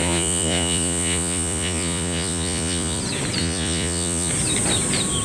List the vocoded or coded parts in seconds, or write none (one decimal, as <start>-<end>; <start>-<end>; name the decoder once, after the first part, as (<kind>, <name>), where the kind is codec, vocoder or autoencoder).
0.0-3.0 (vocoder, Vocos); 3.4-4.3